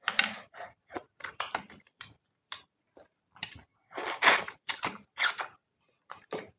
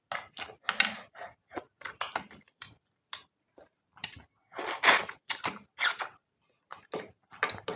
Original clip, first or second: second